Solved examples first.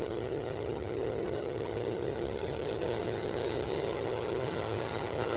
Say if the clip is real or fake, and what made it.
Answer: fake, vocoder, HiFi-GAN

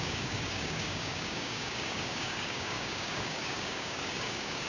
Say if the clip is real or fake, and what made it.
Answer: fake, codec, DAC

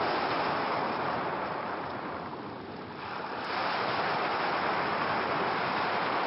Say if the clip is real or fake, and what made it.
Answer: real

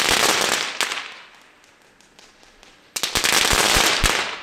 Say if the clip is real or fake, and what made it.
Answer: real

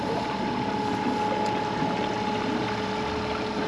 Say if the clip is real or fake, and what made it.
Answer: real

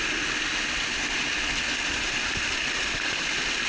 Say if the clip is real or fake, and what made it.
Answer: real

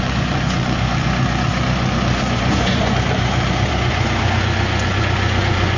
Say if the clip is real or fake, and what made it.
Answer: fake, vocoder, Vocos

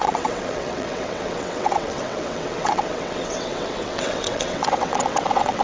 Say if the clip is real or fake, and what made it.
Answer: fake, vocoder, WaveNeXt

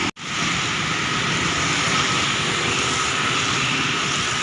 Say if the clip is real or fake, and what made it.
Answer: real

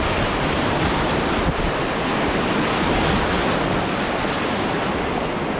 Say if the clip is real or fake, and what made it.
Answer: real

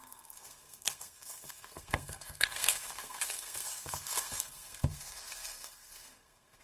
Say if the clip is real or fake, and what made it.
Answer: fake, codec, SNAC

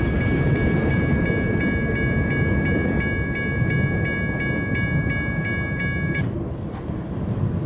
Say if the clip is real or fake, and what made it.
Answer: real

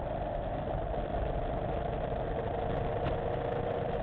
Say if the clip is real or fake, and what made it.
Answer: real